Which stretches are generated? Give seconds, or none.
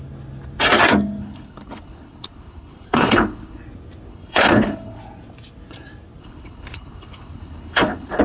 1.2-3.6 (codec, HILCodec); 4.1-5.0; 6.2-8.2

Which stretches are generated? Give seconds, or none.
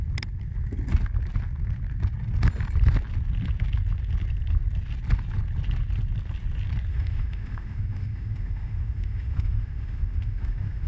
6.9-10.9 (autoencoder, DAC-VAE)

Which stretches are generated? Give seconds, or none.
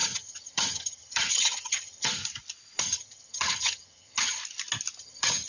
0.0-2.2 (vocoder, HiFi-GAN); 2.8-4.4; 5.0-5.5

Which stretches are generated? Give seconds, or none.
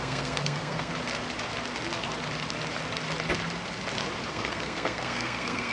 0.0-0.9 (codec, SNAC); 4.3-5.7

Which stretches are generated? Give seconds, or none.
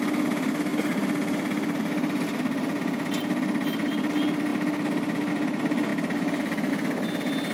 none